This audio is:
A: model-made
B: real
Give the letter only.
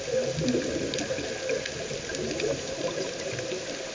B